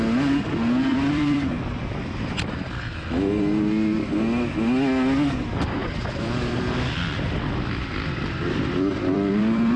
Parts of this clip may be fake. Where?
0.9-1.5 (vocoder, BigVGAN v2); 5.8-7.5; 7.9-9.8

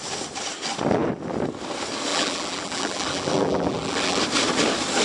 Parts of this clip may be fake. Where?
2.1-4.2 (vocoder, BigVGAN v2)

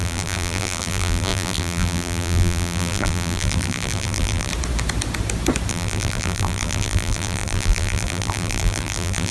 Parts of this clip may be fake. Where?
0.0-4.5 (vocoder, BigVGAN v2); 5.7-9.3

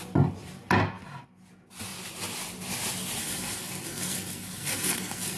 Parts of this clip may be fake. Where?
3.2-5.4 (codec, SNAC)

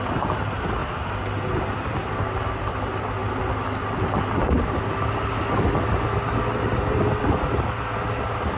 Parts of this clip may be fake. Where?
none

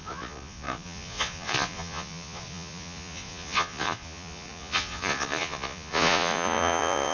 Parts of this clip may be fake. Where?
0.0-7.1 (vocoder, Vocos)